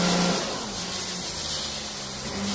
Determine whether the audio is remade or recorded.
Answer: recorded